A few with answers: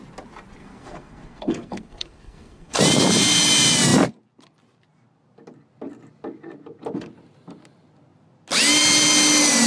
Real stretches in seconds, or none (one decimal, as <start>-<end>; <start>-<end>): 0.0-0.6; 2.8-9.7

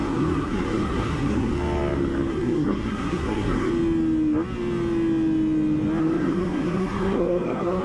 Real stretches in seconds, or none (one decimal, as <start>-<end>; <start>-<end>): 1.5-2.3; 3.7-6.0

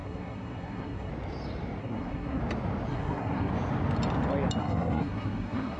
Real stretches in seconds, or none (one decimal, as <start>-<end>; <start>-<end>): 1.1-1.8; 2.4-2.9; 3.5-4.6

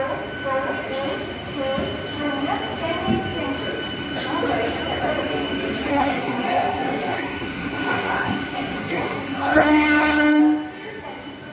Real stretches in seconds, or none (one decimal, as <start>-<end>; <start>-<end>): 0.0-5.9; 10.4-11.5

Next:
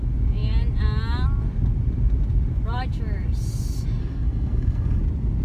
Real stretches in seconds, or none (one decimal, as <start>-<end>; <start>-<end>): 0.0-4.0; 5.0-5.4

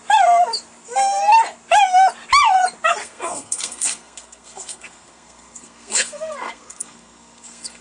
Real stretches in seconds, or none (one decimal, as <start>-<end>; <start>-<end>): 0.0-3.0